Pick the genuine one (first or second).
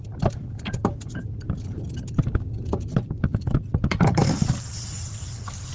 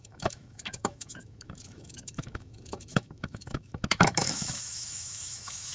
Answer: first